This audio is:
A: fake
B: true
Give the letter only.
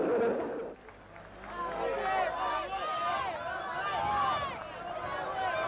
B